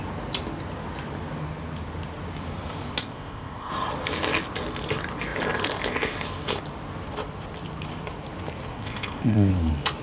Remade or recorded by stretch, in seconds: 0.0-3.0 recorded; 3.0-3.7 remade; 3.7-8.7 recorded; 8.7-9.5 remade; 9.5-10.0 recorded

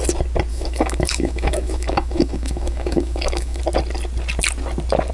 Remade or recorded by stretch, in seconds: 0.0-0.5 recorded; 0.5-3.6 remade; 3.6-5.1 recorded

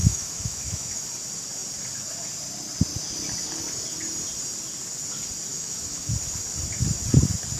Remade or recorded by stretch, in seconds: 0.0-1.0 remade; 1.0-5.5 recorded; 5.5-6.1 remade; 6.1-7.6 recorded